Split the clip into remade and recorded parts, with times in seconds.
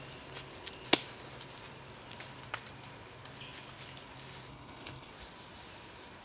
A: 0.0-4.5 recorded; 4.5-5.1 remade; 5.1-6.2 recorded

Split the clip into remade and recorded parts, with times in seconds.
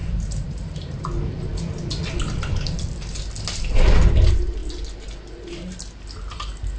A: 0.0-1.0 remade; 1.0-6.8 recorded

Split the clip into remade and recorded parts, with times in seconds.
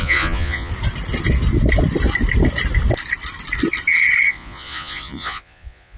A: 0.0-0.7 remade; 0.7-4.3 recorded; 4.3-6.0 remade